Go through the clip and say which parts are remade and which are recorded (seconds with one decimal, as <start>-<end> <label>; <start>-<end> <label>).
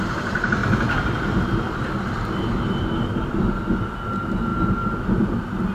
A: 0.0-5.7 recorded